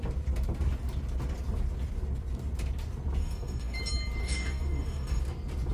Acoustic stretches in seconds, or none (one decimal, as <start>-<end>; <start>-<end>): 0.0-3.2; 3.8-4.2; 5.2-5.7